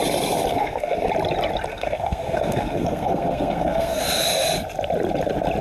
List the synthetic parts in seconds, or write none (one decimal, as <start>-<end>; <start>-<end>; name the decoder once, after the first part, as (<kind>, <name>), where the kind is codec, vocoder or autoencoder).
0.5-1.1 (codec, SNAC); 1.7-4.0